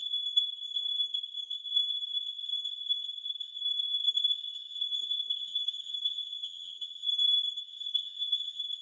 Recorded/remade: remade